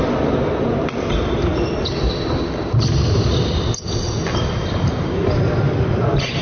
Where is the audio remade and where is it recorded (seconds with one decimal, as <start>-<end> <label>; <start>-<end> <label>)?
0.0-6.4 recorded